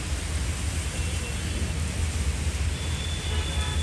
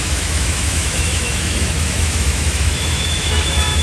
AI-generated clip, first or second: second